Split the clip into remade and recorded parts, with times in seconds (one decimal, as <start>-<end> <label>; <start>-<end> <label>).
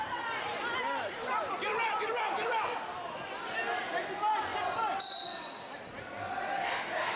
0.0-7.2 recorded